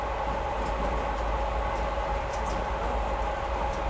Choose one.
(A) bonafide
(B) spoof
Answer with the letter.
A